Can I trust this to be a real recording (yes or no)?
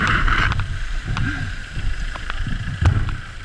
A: no